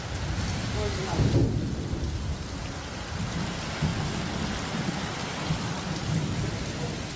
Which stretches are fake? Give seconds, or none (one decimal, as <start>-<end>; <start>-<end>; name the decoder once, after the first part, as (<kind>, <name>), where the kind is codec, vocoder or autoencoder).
none